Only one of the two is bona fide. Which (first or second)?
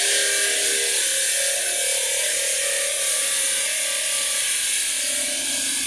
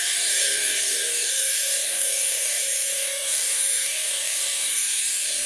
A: first